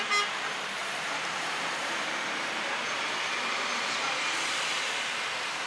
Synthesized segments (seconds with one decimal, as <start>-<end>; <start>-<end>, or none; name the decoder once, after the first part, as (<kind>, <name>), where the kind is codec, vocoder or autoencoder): 0.8-4.2 (vocoder, BigVGAN v2)